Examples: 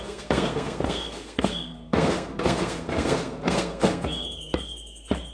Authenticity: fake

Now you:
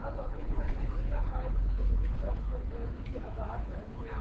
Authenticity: fake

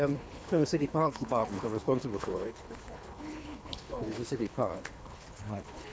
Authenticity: fake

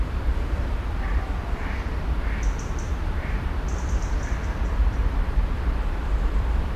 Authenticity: fake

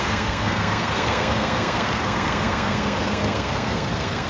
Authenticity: fake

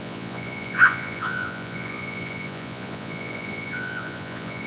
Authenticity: fake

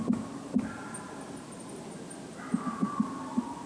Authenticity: real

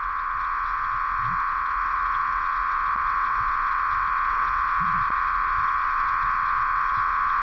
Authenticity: fake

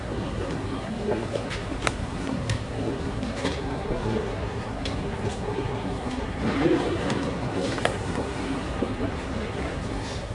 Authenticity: fake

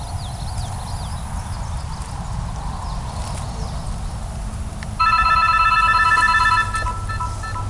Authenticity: real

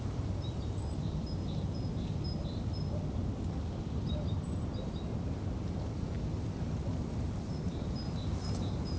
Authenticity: real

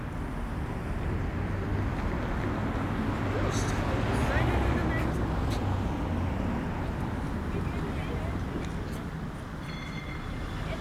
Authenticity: real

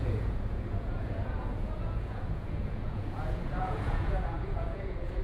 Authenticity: fake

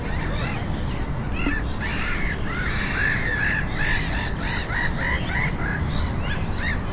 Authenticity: real